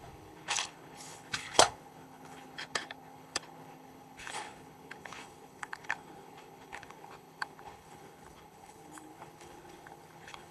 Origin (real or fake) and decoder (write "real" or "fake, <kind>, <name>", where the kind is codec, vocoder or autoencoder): fake, codec, HILCodec